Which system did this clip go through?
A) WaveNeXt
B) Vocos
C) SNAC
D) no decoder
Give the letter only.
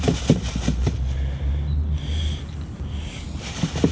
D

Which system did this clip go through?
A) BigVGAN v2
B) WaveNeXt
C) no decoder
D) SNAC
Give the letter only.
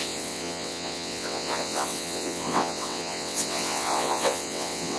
B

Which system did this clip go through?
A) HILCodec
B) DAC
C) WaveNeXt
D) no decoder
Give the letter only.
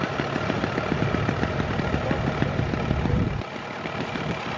D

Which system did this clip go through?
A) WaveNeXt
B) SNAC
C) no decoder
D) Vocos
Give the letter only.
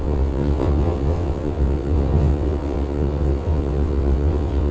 A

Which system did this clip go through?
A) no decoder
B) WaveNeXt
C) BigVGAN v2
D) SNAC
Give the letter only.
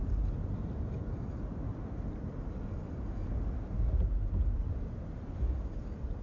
A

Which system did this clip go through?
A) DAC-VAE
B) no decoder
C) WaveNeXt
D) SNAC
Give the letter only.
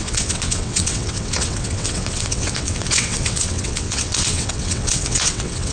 C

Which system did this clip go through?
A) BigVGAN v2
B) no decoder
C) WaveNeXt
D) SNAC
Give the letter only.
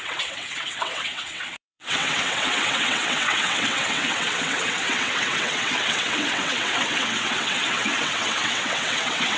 C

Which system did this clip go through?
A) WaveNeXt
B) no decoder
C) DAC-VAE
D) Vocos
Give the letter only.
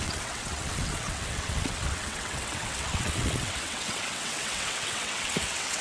A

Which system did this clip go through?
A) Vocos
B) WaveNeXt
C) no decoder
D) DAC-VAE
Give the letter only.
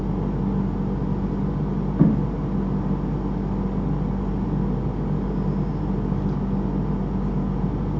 C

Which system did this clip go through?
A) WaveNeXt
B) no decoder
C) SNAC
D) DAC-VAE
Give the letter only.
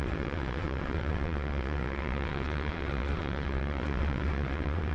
A